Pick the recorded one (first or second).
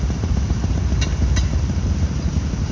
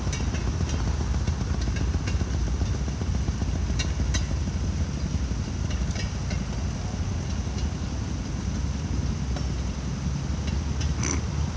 second